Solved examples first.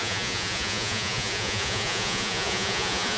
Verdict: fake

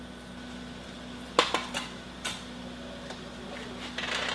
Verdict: real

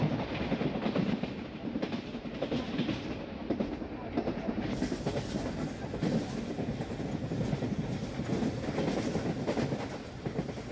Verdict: real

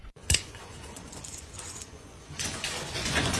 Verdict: fake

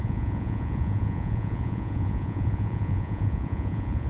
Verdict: fake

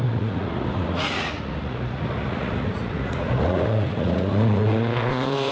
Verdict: fake